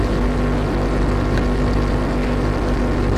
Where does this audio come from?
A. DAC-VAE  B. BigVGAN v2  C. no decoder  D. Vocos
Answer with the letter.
C